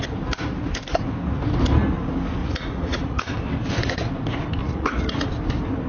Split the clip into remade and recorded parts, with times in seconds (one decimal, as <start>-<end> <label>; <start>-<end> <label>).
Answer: 0.0-2.4 recorded; 2.4-3.3 remade; 3.3-4.6 recorded; 4.6-5.3 remade; 5.3-5.9 recorded